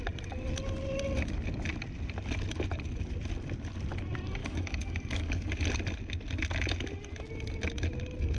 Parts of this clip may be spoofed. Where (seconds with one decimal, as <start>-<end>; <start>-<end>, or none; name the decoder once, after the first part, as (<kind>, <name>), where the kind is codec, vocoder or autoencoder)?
4.4-5.5 (codec, DAC)